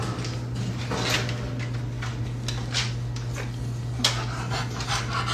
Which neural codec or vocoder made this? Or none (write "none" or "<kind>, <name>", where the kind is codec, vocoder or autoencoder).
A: none